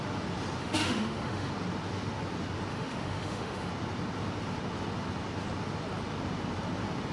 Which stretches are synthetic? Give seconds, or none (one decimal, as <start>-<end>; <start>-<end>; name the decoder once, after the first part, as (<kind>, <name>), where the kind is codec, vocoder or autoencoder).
0.6-1.5 (autoencoder, DAC-VAE); 2.7-3.7